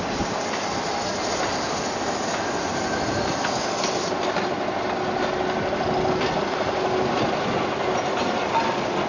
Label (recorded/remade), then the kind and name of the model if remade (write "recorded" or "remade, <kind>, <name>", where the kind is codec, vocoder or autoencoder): recorded